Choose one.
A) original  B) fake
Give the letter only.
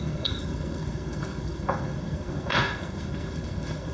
B